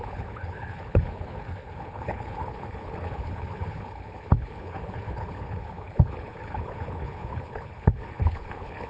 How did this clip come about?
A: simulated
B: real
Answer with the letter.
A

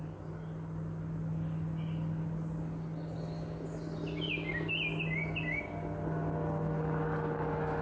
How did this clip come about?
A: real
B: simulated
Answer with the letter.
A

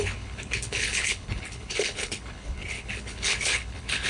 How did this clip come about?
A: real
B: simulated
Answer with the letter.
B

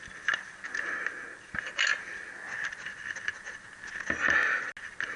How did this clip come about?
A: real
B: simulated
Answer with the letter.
A